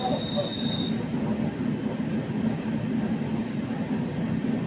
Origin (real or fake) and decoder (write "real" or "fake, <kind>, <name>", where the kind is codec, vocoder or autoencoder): real